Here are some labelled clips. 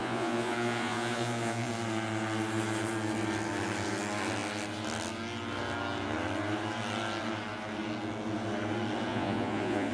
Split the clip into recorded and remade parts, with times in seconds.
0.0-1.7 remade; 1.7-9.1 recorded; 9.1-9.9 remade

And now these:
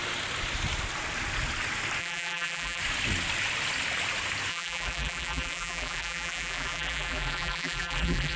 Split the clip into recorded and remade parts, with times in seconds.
0.0-2.0 recorded; 2.0-2.8 remade; 2.8-4.5 recorded; 4.5-8.4 remade

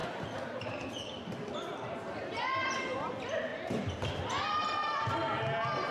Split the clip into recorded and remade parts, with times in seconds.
0.0-3.1 remade; 3.1-3.5 recorded; 3.5-4.1 remade; 4.1-5.9 recorded

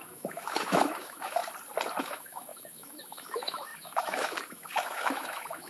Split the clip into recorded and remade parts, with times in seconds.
0.0-1.4 remade; 1.4-2.0 recorded; 2.0-5.7 remade

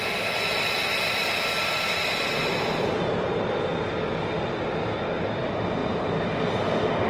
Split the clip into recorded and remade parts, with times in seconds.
0.0-1.6 recorded; 1.6-2.2 remade; 2.2-5.8 recorded; 5.8-6.5 remade; 6.5-7.1 recorded

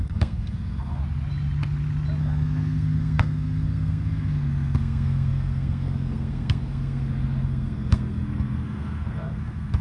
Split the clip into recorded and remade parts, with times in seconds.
0.0-1.0 remade; 1.0-2.2 recorded; 2.2-9.8 remade

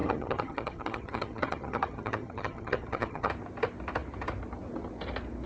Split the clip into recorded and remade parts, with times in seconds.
0.0-3.3 remade; 3.3-5.5 recorded

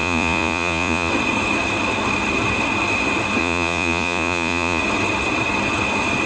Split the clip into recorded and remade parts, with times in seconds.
0.0-1.1 remade; 1.1-3.4 recorded; 3.4-4.8 remade; 4.8-6.3 recorded